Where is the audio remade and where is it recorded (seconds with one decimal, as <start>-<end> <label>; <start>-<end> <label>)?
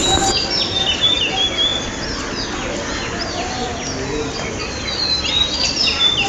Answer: 0.0-6.3 recorded